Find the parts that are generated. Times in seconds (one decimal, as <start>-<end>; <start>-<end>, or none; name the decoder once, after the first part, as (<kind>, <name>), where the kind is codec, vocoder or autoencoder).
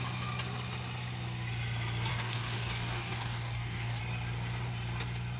2.1-4.0 (codec, DAC)